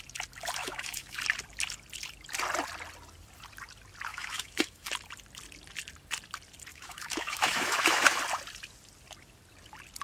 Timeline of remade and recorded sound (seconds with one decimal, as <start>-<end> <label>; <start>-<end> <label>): 0.0-0.6 recorded; 0.6-1.2 remade; 1.2-4.1 recorded; 4.1-4.9 remade; 4.9-6.7 recorded; 6.7-8.2 remade; 8.2-10.0 recorded